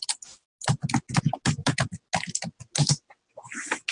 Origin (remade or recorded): recorded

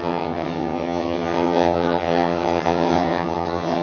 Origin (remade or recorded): remade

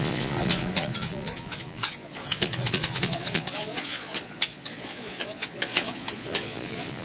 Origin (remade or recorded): remade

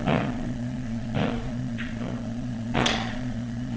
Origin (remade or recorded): remade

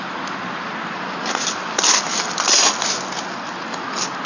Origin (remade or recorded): recorded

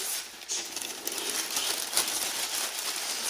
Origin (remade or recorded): recorded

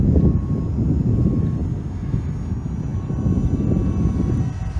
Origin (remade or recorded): recorded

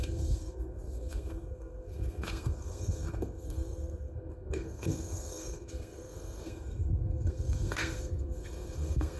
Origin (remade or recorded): remade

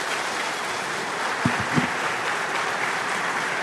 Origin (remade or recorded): remade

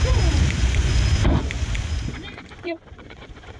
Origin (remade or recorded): remade